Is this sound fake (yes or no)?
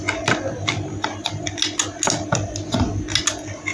no